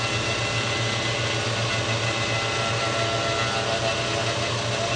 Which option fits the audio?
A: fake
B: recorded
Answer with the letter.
B